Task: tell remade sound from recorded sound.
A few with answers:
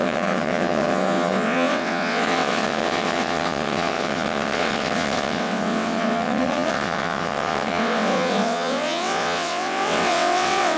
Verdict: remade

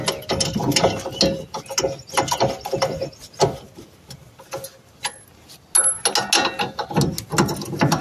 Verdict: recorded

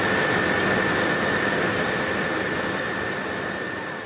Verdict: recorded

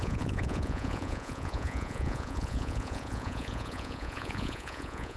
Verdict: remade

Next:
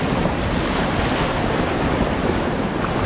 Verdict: recorded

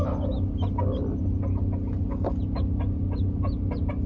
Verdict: recorded